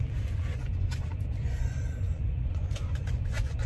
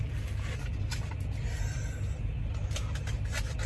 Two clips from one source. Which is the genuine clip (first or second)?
second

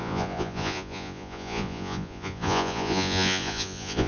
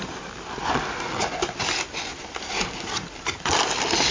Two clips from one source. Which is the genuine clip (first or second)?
second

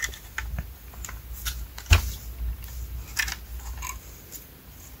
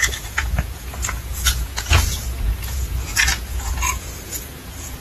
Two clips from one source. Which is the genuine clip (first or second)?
first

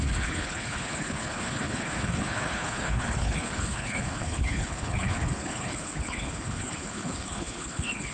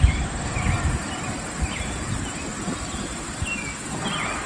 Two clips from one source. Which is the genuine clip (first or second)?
second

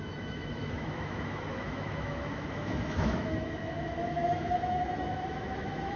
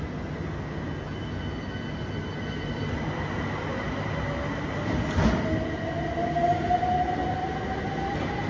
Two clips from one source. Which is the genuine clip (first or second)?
second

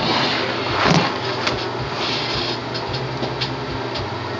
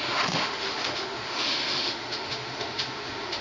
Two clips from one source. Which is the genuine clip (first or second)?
first